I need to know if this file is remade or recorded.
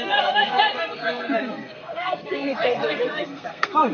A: remade